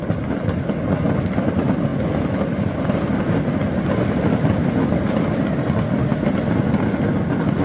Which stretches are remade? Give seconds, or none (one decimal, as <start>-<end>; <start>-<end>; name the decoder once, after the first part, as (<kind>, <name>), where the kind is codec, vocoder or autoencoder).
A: none